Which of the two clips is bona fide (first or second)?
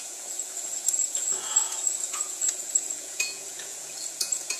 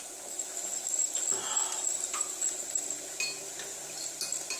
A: second